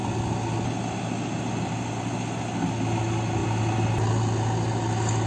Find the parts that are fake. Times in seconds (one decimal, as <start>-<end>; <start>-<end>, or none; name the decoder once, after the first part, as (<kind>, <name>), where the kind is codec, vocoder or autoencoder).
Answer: none